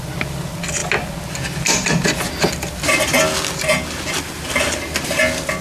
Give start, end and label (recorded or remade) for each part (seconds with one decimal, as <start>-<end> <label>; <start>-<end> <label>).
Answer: 0.0-5.6 recorded